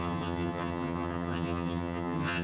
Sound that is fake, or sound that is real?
fake